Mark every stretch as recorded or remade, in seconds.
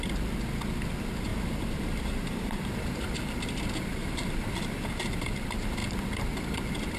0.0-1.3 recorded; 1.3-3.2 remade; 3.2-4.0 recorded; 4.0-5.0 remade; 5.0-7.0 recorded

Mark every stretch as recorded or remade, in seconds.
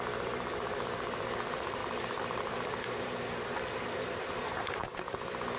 0.0-1.8 remade; 1.8-2.4 recorded; 2.4-4.8 remade; 4.8-5.6 recorded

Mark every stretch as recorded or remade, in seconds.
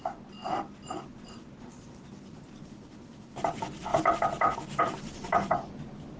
0.0-0.4 remade; 0.4-1.3 recorded; 1.3-3.9 remade; 3.9-4.8 recorded; 4.8-6.2 remade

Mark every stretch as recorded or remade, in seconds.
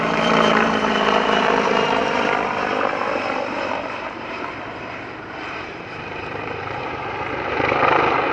0.0-8.3 remade